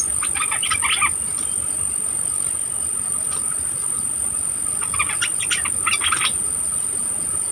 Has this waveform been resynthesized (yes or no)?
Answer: no